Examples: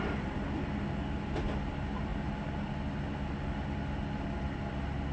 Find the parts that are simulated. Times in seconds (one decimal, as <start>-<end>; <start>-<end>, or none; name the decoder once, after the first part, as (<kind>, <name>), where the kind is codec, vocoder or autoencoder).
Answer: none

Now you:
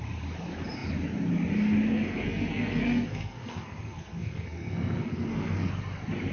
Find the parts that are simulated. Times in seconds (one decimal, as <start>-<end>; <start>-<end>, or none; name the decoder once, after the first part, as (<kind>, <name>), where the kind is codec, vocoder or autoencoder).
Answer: 1.9-5.7 (codec, SNAC)

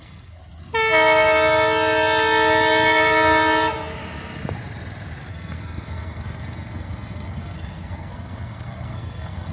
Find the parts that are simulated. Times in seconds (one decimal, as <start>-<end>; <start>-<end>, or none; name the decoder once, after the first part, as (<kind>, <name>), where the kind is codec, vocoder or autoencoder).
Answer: 0.0-0.4 (codec, SNAC); 5.3-9.5

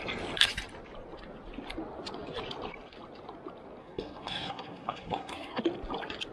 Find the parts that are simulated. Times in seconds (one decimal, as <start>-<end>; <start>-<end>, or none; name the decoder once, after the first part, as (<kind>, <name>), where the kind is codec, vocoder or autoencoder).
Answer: 3.8-5.6 (codec, SNAC)

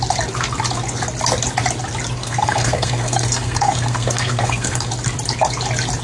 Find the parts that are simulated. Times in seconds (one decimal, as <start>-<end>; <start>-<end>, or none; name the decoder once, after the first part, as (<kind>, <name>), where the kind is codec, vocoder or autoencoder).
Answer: 2.2-4.9 (codec, SNAC)

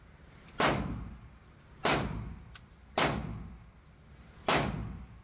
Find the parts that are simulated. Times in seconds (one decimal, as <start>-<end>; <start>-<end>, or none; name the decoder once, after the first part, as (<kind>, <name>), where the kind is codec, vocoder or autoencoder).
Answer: none

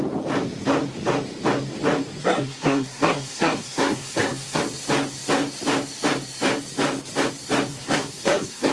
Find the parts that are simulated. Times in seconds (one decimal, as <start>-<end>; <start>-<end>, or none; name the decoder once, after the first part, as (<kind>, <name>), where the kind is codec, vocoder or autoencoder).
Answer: 2.2-4.6 (codec, SNAC); 7.7-8.7

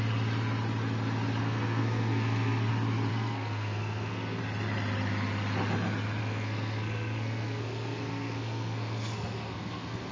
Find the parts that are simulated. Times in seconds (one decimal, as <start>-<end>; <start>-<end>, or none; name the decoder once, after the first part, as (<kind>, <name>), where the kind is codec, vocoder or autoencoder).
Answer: 1.4-2.7 (codec, SNAC); 3.1-4.4; 6.2-10.1